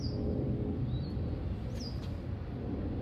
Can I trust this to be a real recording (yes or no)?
yes